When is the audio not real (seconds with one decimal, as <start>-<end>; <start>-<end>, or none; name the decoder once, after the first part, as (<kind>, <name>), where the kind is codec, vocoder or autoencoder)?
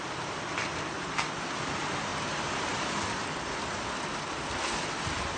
none